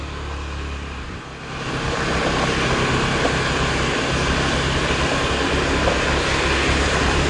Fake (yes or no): no